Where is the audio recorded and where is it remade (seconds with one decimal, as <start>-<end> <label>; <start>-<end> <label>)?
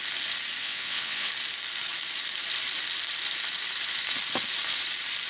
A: 0.0-0.6 recorded; 0.6-1.3 remade; 1.3-5.3 recorded